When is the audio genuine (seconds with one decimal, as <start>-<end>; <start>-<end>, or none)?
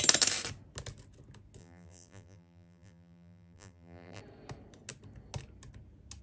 0.0-1.6; 4.2-6.2